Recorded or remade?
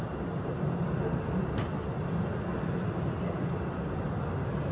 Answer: recorded